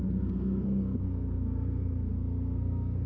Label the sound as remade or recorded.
remade